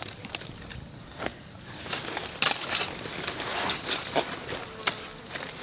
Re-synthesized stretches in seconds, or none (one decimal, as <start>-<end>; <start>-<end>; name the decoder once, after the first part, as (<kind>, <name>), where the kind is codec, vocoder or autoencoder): none